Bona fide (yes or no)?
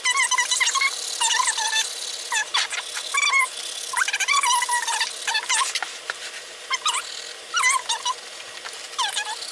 yes